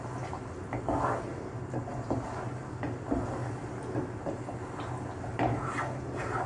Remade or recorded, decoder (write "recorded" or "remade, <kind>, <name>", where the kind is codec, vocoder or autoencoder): recorded